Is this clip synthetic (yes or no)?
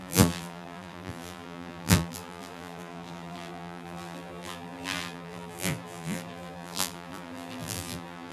yes